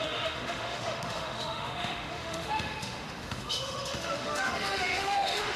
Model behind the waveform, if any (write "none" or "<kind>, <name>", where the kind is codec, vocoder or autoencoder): autoencoder, DAC-VAE